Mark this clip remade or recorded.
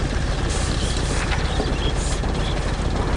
recorded